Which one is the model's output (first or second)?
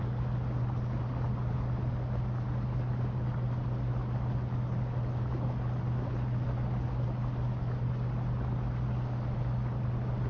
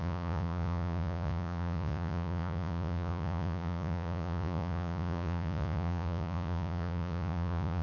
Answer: second